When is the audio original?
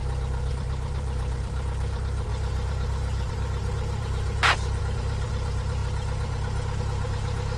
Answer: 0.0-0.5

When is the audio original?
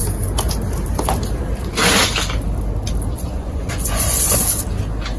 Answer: 0.0-3.1; 4.4-5.2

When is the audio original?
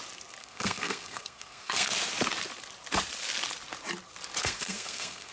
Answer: 0.0-0.4; 1.9-4.4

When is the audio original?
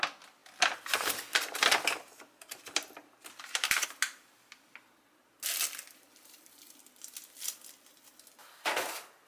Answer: 0.0-9.3